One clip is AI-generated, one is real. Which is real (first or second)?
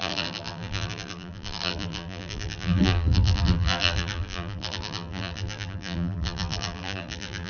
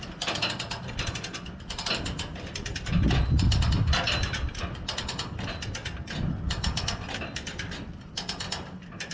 second